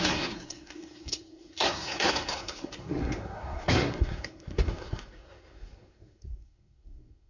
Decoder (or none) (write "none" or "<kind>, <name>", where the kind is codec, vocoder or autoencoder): codec, SNAC